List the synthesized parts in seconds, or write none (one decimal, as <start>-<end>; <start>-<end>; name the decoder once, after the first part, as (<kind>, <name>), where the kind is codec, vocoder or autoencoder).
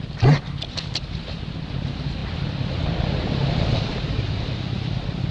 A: none